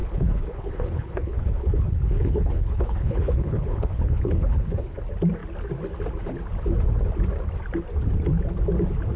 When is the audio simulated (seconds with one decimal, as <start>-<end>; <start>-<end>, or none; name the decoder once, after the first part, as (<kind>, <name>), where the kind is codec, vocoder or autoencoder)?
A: 0.0-5.0 (codec, HILCodec)